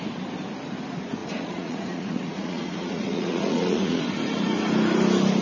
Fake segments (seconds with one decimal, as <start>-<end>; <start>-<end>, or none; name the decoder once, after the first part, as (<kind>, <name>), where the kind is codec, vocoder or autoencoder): 1.2-4.0 (vocoder, Vocos)